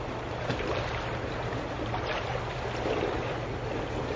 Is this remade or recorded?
recorded